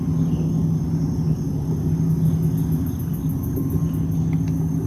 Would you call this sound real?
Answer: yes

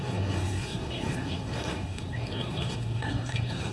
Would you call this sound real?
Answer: no